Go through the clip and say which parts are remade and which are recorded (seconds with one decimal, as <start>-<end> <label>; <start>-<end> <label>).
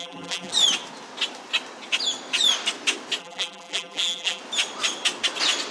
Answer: 0.0-0.5 remade; 0.5-3.2 recorded; 3.2-4.4 remade; 4.4-5.7 recorded